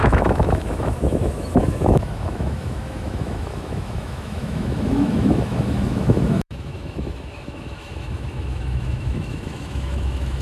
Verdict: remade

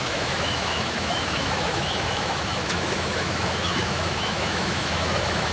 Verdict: remade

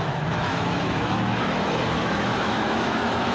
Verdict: remade